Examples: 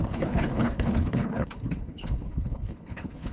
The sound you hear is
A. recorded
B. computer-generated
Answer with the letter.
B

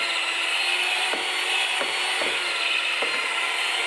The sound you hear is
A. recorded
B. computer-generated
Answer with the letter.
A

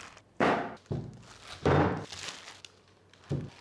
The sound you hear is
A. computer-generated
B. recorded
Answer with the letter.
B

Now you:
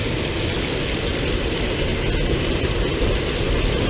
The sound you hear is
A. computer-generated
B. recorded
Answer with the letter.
B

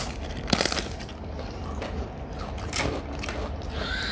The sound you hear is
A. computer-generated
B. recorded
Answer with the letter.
B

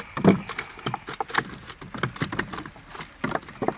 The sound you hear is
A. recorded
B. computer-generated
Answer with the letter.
A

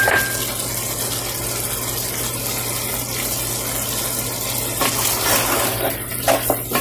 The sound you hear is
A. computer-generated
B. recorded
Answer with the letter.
B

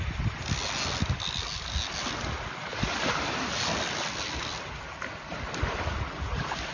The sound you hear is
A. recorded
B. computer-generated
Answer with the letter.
A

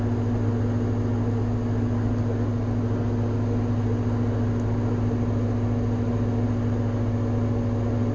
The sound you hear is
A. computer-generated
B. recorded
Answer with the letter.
B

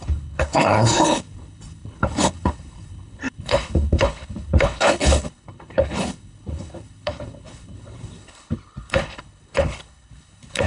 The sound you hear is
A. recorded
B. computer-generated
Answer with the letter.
B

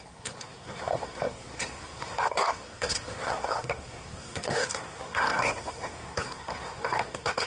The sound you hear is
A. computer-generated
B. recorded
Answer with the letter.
A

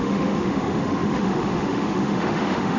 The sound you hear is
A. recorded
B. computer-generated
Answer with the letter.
B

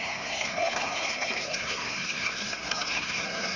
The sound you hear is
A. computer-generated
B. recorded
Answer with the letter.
A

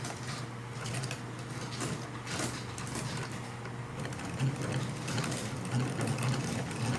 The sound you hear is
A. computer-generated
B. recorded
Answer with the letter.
B